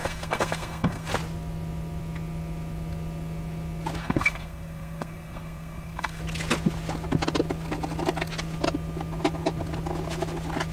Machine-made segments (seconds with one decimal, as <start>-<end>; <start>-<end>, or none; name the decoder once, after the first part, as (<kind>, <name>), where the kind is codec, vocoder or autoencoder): 0.0-1.1 (codec, SNAC); 4.0-6.2